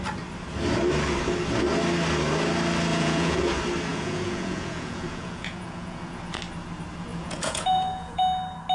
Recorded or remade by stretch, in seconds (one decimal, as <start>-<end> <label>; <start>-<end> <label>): 0.0-2.9 recorded; 2.9-3.4 remade; 3.4-3.9 recorded; 3.9-6.2 remade; 6.2-7.1 recorded; 7.1-8.2 remade; 8.2-8.7 recorded